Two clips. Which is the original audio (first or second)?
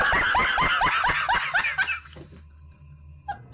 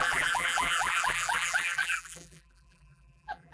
first